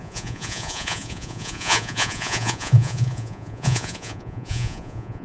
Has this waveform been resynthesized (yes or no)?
yes